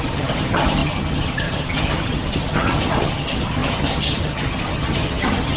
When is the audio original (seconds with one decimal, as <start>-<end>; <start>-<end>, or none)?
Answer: none